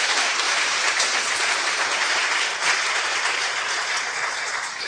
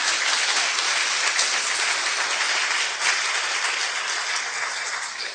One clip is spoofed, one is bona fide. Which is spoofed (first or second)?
first